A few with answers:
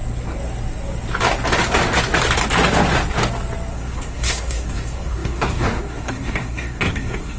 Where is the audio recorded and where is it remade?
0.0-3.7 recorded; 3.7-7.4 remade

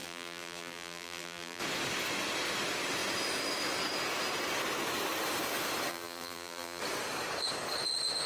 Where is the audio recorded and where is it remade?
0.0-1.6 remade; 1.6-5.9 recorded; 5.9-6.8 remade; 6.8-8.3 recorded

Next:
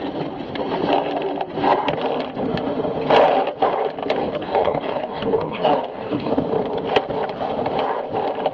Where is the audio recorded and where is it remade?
0.0-4.2 recorded; 4.2-6.3 remade; 6.3-8.5 recorded

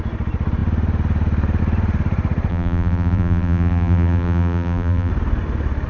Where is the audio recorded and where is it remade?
0.0-2.5 recorded; 2.5-5.1 remade; 5.1-5.9 recorded

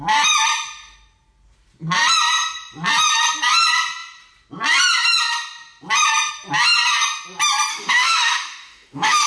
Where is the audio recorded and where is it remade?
0.0-7.7 recorded; 7.7-9.3 remade

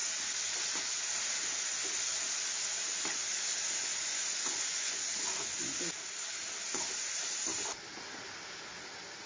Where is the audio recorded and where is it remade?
0.0-3.9 recorded; 3.9-5.1 remade; 5.1-9.3 recorded